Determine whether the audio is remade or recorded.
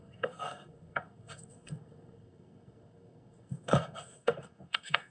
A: remade